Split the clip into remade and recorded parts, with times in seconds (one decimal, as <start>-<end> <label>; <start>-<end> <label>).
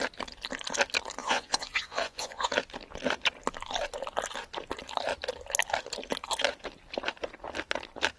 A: 0.0-1.2 recorded; 1.2-2.5 remade; 2.5-8.2 recorded